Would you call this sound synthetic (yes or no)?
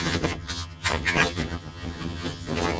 yes